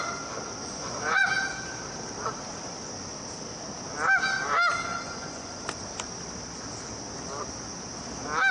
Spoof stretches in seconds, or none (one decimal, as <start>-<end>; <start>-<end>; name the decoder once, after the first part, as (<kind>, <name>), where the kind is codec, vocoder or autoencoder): 0.6-1.3 (vocoder, Vocos); 4.9-5.6